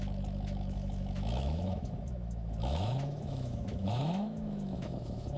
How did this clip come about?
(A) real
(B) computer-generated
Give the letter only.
B